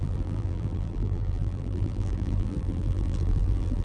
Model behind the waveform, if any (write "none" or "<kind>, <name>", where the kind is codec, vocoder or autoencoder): vocoder, BigVGAN v2